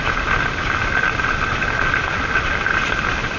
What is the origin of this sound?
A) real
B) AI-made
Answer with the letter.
A